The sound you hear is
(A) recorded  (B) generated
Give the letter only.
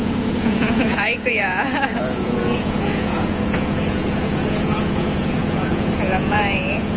B